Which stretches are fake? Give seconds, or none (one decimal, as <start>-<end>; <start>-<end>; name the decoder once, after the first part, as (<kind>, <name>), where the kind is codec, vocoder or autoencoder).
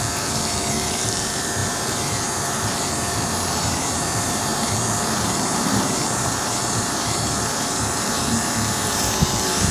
0.0-9.7 (vocoder, BigVGAN v2)